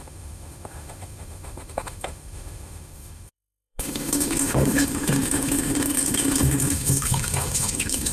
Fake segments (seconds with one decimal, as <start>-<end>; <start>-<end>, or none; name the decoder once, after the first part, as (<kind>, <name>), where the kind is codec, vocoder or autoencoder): 0.0-8.1 (autoencoder, DAC-VAE)